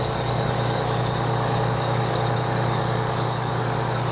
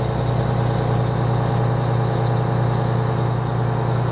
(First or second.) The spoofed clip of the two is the first